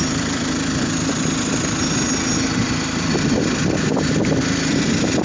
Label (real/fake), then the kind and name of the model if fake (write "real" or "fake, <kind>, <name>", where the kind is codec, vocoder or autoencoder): fake, vocoder, BigVGAN v2